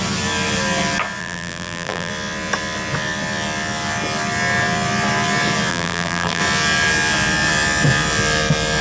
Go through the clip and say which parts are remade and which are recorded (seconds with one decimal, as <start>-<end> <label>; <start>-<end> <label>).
0.0-1.2 recorded; 1.2-2.1 remade; 2.1-5.7 recorded; 5.7-6.4 remade; 6.4-8.8 recorded